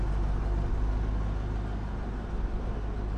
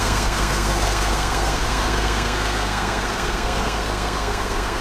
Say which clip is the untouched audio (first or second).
first